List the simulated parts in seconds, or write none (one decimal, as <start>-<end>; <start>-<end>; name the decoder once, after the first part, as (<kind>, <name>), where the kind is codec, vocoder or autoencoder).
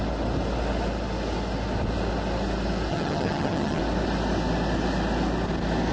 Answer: 2.9-3.8 (vocoder, HiFi-GAN)